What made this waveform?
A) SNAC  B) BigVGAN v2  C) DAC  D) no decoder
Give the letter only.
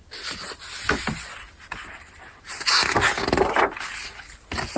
D